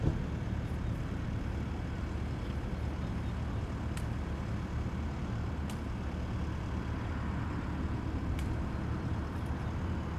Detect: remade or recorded recorded